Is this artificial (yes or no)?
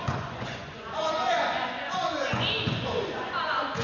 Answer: yes